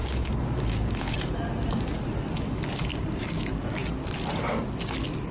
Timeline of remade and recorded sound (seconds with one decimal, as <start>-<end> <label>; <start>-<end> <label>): 0.0-1.2 remade; 1.2-2.9 recorded; 2.9-3.9 remade; 3.9-5.3 recorded